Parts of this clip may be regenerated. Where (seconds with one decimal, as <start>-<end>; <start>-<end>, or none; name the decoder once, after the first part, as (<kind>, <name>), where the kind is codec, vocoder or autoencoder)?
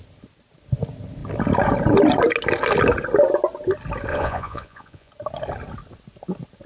4.1-5.1 (vocoder, Vocos)